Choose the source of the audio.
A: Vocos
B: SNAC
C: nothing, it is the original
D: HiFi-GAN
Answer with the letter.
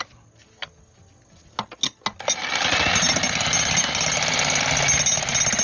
C